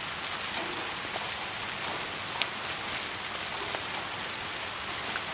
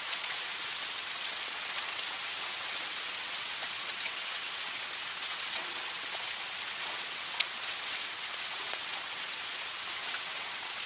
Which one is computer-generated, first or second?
second